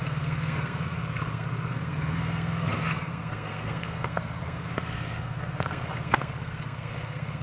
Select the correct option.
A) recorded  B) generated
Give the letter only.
B